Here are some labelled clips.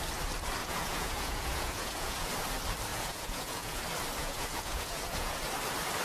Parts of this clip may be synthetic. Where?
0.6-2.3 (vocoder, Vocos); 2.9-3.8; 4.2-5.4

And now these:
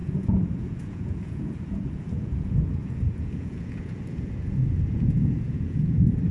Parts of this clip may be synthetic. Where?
0.0-6.3 (vocoder, Vocos)

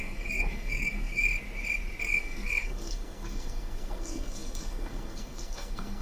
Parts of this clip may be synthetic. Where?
0.0-1.3 (codec, SNAC); 2.0-6.0

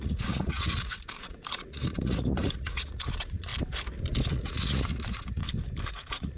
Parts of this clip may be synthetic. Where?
0.0-3.5 (vocoder, Vocos); 4.3-5.4; 5.9-6.4

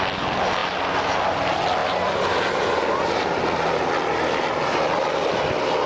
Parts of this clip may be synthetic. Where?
none

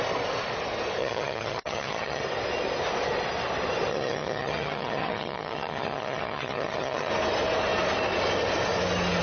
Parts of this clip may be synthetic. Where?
1.0-2.2 (vocoder, HiFi-GAN); 3.9-7.1